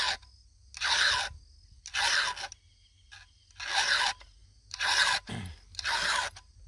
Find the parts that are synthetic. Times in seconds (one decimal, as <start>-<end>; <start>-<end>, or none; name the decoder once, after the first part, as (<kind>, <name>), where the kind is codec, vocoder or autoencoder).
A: 4.4-5.3 (vocoder, BigVGAN v2)